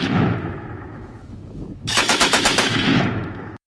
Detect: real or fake fake